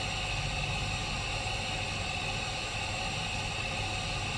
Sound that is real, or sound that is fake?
real